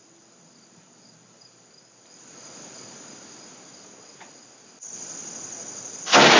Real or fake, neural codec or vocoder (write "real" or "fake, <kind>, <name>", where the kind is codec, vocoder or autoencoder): real